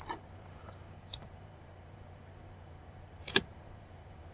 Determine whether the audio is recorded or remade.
remade